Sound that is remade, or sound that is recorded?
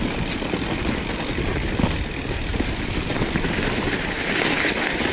recorded